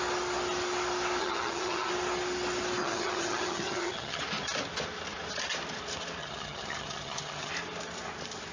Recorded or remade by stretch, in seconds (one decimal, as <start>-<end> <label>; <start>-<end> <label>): 0.0-1.2 recorded; 1.2-1.9 remade; 1.9-2.8 recorded; 2.8-4.2 remade; 4.2-6.2 recorded; 6.2-7.5 remade; 7.5-8.5 recorded